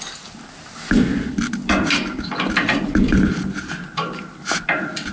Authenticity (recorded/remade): recorded